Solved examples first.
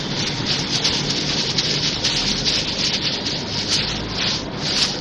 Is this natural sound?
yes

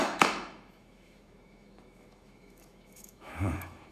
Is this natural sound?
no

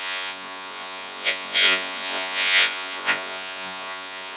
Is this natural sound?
no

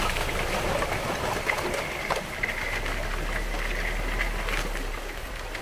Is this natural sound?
yes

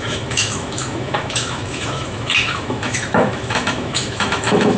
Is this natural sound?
no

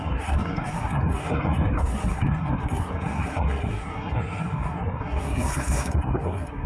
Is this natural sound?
no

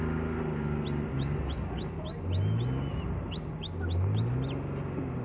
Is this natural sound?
yes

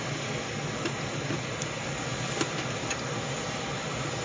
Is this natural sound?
yes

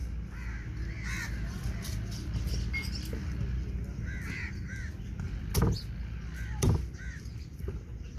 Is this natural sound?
yes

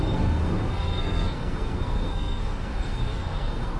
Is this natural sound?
no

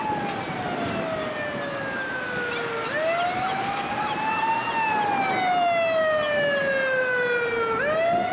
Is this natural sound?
yes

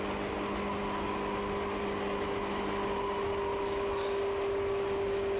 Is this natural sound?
yes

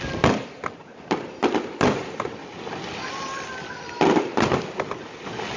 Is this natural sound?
yes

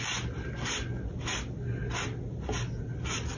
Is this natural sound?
yes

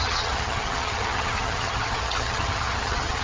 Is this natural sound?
no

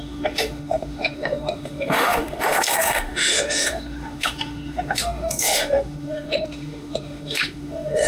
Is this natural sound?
no